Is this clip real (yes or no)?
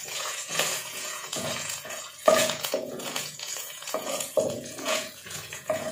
no